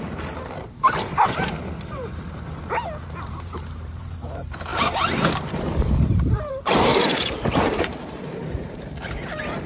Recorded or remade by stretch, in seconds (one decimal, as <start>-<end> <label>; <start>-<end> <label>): 0.0-9.7 remade

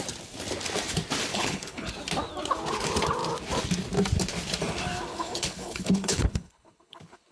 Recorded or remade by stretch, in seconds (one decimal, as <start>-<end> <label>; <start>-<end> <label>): 0.0-1.3 recorded; 1.3-1.9 remade; 1.9-5.1 recorded; 5.1-7.3 remade

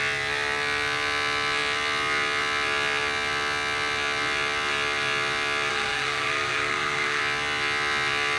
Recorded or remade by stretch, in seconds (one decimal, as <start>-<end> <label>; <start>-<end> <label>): 0.0-5.7 recorded; 5.7-7.2 remade; 7.2-8.4 recorded